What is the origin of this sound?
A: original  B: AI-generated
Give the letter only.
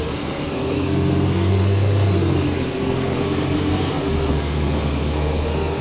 B